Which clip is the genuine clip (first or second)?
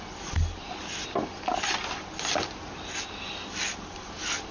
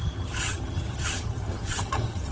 first